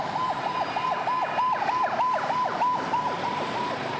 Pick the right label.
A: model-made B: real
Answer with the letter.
B